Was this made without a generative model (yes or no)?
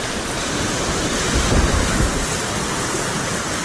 yes